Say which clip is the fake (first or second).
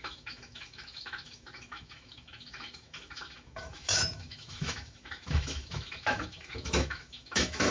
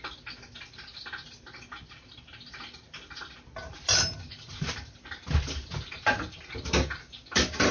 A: first